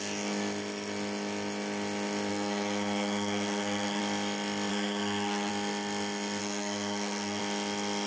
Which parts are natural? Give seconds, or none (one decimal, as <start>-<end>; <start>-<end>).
0.0-2.3; 4.0-4.7; 5.5-6.4; 7.4-8.1